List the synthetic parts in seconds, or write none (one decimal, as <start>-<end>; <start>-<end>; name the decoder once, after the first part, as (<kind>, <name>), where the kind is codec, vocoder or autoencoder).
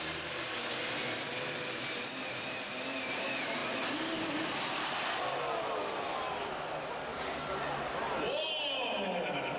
none